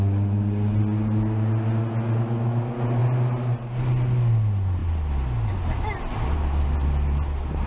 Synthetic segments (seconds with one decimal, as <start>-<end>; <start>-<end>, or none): 3.0-3.7